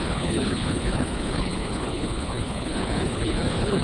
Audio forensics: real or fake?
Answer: fake